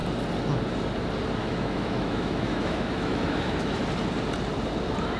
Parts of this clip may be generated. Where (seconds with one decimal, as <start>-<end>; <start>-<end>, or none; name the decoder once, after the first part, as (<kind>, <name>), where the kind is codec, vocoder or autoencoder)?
1.4-3.8 (autoencoder, DAC-VAE)